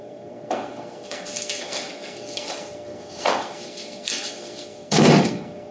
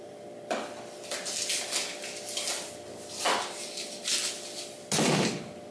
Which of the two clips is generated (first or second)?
first